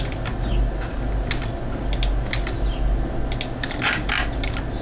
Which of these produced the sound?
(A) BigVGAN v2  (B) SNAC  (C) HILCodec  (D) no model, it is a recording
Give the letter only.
D